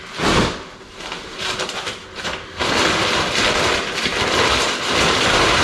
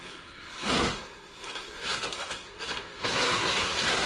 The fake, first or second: second